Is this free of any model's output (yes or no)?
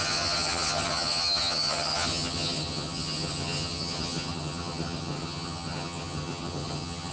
no